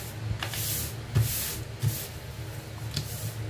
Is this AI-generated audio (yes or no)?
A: no